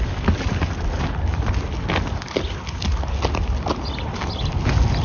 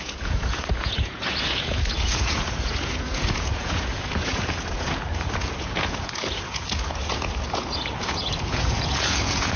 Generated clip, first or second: second